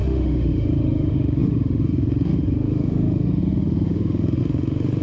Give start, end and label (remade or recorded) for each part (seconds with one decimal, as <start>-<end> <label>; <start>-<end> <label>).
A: 0.0-5.0 remade